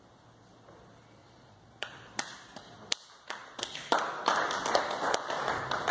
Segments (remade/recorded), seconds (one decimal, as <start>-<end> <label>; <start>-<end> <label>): 0.0-1.2 recorded; 1.2-2.1 remade; 2.1-5.9 recorded